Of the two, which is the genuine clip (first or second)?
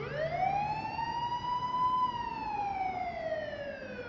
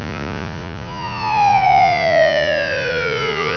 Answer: first